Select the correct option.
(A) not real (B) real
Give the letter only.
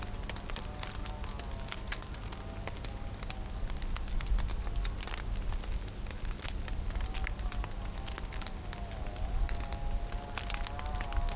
B